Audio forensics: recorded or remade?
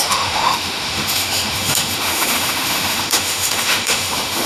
remade